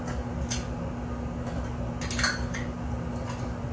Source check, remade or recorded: recorded